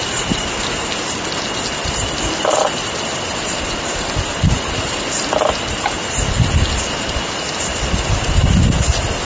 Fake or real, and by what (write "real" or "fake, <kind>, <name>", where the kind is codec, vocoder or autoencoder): real